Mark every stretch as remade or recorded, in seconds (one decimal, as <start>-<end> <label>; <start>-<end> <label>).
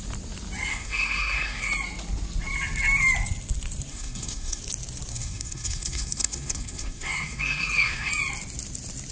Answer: 0.0-0.7 recorded; 0.7-1.7 remade; 1.7-3.9 recorded; 3.9-4.6 remade; 4.6-5.1 recorded; 5.1-8.1 remade; 8.1-9.1 recorded